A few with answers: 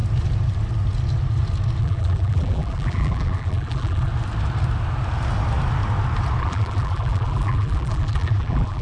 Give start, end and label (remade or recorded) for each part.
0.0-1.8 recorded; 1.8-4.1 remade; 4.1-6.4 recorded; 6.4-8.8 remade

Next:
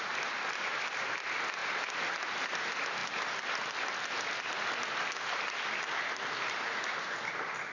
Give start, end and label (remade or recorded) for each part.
0.0-7.7 recorded

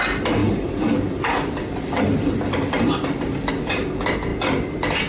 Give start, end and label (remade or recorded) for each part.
0.0-0.4 recorded; 0.4-3.5 remade; 3.5-4.3 recorded; 4.3-5.1 remade